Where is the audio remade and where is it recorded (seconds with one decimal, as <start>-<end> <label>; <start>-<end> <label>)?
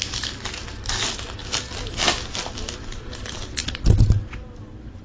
0.0-5.0 recorded